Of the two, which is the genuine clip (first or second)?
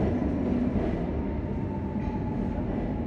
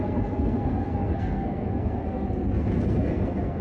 first